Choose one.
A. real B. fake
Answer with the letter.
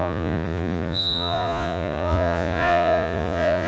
B